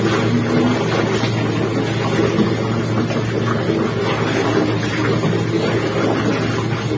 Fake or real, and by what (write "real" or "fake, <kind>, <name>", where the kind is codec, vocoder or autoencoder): real